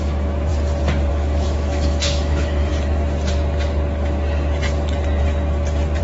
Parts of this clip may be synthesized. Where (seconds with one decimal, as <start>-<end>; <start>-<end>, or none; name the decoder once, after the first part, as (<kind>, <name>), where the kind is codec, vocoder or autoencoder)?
0.0-0.5 (autoencoder, DAC-VAE); 1.1-2.7